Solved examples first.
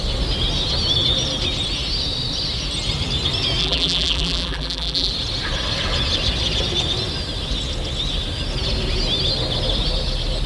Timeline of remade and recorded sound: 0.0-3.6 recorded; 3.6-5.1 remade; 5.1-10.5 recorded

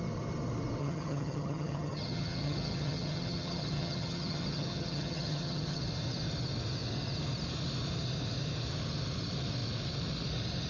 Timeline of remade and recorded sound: 0.0-0.8 recorded; 0.8-5.8 remade; 5.8-10.7 recorded